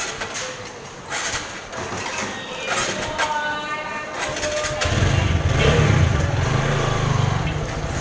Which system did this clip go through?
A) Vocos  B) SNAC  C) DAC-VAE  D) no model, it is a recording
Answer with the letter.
D